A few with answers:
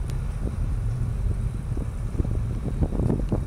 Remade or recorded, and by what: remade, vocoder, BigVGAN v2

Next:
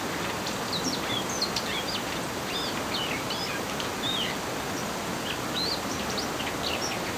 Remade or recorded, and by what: recorded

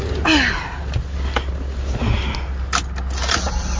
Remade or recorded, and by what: recorded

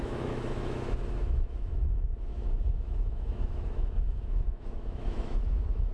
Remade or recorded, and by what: remade, autoencoder, DAC-VAE